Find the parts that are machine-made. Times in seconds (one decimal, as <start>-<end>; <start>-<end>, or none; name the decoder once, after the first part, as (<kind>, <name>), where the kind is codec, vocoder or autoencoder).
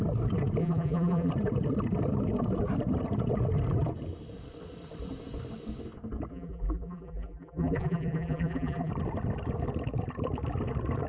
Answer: 0.6-1.3 (vocoder, BigVGAN v2); 6.3-8.9